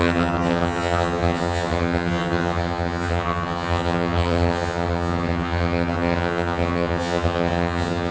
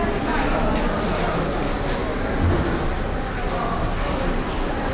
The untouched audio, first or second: second